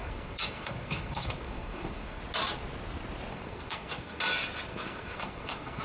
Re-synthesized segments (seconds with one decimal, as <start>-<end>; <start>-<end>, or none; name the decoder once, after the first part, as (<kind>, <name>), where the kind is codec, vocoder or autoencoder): 0.0-2.2 (codec, SNAC); 3.3-4.2; 4.7-5.8